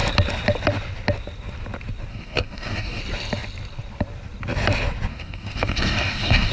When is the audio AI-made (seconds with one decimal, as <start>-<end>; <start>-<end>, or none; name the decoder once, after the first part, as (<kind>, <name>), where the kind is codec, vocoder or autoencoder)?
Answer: 2.1-3.0 (codec, DAC); 5.1-6.5